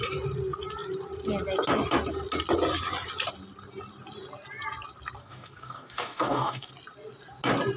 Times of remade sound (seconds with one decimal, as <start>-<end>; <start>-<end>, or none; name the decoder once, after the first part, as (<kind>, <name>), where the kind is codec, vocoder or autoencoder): 5.2-6.7 (codec, DAC)